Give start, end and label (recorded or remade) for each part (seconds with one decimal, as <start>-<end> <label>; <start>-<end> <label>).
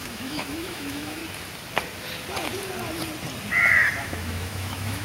0.0-1.2 remade; 1.2-4.0 recorded; 4.0-5.0 remade